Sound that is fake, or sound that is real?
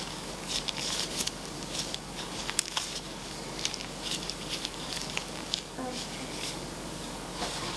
fake